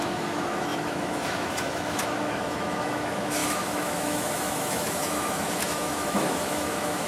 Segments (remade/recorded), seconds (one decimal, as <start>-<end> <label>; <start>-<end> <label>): 0.0-7.1 remade